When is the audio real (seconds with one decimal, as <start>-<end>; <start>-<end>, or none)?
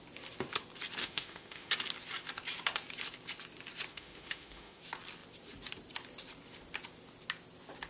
0.0-1.0; 1.7-3.9; 4.8-7.9